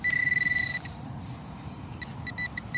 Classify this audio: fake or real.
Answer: fake